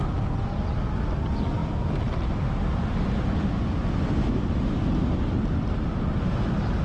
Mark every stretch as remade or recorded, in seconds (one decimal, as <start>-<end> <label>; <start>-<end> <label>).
0.0-6.8 recorded